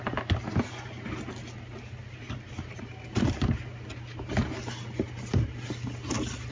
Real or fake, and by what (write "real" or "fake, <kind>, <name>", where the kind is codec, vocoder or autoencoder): real